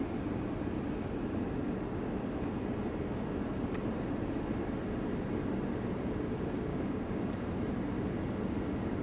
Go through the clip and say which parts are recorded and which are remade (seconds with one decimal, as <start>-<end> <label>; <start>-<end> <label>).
0.0-6.7 recorded; 6.7-7.3 remade; 7.3-9.0 recorded